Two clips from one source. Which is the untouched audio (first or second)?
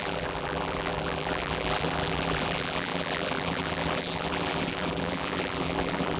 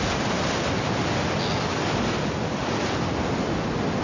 second